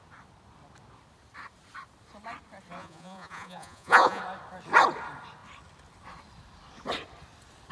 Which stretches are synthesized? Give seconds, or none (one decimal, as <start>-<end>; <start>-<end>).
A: 2.8-4.2